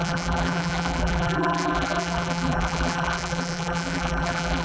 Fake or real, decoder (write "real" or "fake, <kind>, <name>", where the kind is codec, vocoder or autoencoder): fake, vocoder, BigVGAN v2